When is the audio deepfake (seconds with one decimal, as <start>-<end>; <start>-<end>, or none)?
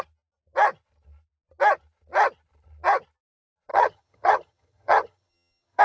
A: 3.7-5.8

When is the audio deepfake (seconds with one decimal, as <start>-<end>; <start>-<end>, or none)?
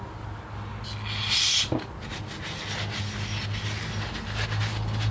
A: none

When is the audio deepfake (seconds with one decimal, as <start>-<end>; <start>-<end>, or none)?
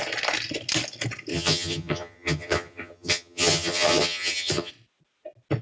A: 1.3-4.7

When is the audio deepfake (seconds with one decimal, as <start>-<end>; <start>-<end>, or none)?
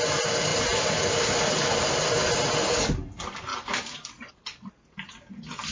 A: none